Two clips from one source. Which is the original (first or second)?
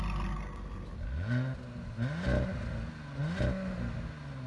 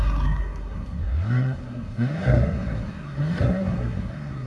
first